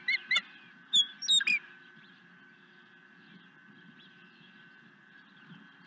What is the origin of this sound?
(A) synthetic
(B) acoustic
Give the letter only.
B